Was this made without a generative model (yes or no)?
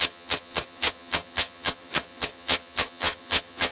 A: no